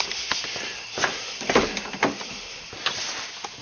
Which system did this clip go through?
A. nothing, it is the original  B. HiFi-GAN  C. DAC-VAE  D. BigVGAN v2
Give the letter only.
A